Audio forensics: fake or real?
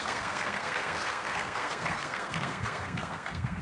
fake